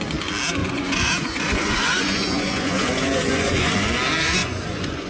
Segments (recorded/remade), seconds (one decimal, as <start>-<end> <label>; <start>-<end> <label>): 0.0-0.6 recorded; 0.6-3.7 remade; 3.7-4.4 recorded; 4.4-5.1 remade